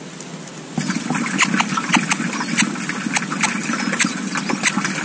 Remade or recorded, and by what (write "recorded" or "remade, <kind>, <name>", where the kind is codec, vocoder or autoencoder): recorded